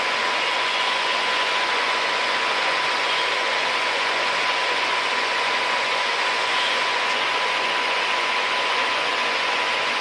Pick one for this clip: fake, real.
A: fake